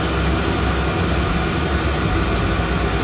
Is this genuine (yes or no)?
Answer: yes